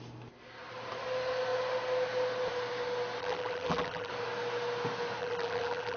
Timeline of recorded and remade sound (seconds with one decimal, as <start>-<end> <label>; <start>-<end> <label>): 0.0-3.2 recorded; 3.2-4.1 remade; 4.1-5.2 recorded; 5.2-6.0 remade